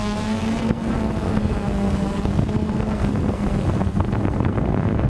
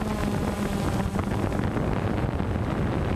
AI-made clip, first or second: first